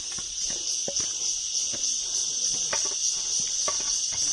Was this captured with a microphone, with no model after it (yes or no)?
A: yes